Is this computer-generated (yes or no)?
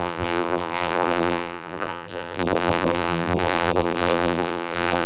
yes